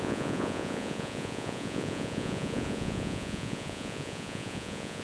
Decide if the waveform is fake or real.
fake